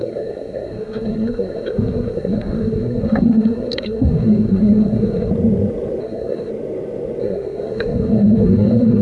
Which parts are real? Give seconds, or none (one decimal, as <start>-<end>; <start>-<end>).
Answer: 5.3-6.0; 6.5-7.2